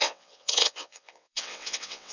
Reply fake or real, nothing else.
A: fake